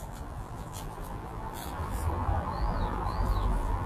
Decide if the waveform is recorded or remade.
remade